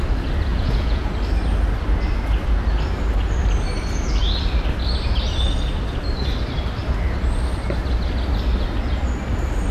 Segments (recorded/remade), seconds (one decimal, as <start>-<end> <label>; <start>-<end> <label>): 0.0-0.5 recorded; 0.5-1.1 remade; 1.1-9.7 recorded